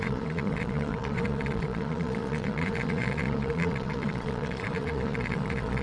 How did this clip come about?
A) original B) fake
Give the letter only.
B